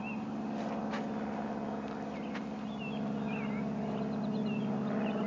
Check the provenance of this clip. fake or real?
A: real